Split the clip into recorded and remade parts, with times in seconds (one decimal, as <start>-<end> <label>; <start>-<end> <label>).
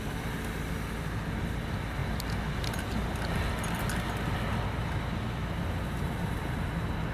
0.0-7.1 recorded